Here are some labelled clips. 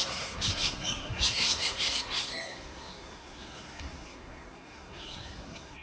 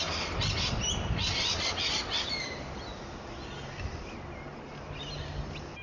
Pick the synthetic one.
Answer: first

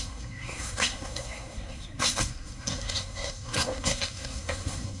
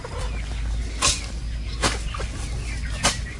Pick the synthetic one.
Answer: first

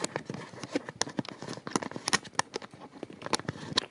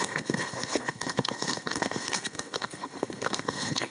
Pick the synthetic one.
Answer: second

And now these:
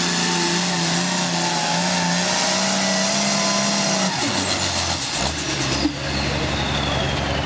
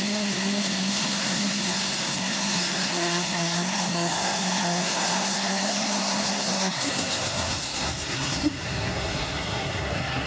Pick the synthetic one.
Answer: second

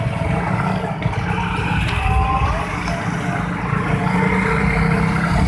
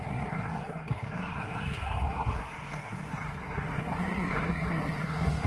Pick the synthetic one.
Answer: second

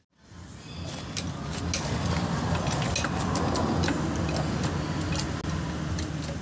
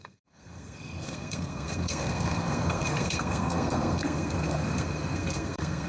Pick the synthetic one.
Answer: second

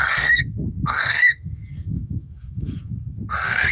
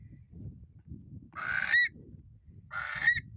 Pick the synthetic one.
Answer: first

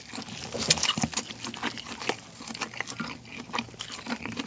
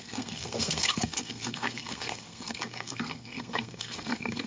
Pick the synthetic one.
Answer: second